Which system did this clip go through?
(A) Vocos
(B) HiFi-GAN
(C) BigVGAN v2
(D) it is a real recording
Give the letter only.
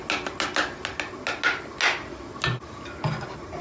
D